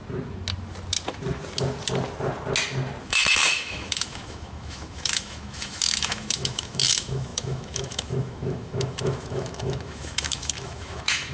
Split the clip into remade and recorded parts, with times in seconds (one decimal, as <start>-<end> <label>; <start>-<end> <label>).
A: 0.0-3.0 recorded; 3.0-11.3 remade